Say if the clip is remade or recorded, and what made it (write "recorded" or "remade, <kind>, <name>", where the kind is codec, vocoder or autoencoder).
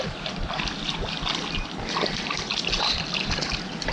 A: recorded